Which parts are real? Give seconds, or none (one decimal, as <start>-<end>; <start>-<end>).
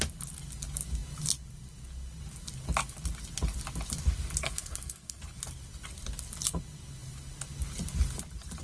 0.0-4.4; 5.2-8.6